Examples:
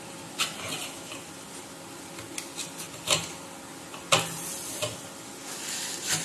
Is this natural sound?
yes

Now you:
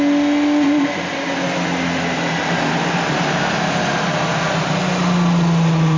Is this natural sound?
yes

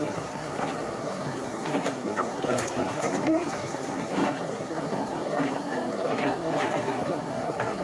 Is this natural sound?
no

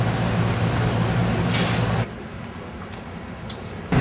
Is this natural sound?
no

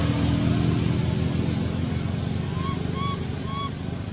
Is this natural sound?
yes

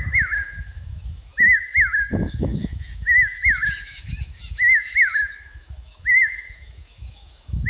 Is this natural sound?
no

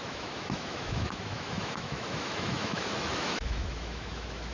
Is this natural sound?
no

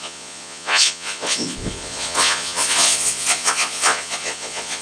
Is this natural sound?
no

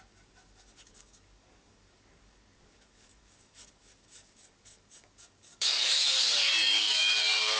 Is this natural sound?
no